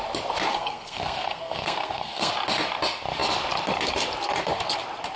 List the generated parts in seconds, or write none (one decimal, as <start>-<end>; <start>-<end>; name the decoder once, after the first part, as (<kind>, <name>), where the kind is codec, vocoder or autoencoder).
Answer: 0.5-2.3 (codec, SNAC)